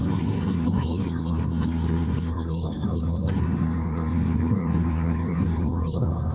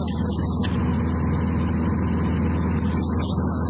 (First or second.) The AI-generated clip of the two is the first